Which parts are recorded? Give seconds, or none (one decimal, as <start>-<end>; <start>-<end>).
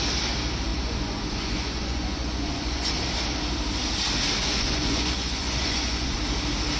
0.0-0.7; 2.9-4.4; 6.2-6.8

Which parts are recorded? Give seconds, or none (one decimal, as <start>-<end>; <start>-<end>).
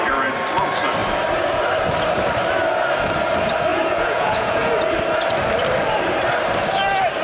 0.0-3.7; 4.7-7.2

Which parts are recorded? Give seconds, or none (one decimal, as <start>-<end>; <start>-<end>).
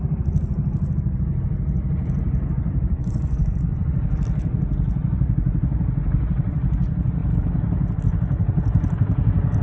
0.0-2.9; 3.9-9.6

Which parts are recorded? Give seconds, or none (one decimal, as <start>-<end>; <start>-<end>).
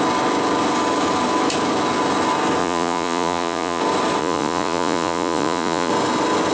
0.0-2.6; 3.8-4.2; 5.9-6.5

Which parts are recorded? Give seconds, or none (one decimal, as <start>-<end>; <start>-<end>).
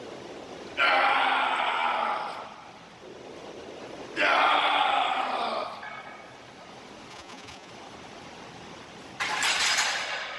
0.0-7.1; 7.7-10.4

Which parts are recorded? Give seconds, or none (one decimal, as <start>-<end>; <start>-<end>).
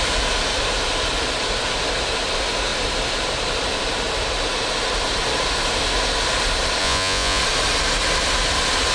0.0-6.8; 7.4-8.9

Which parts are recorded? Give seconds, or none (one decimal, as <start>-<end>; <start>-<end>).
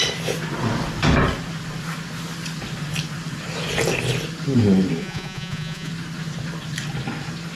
0.0-5.0; 5.9-7.5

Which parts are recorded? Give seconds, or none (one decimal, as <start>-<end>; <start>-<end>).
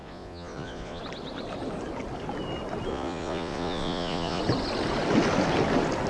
1.0-2.9; 4.4-6.1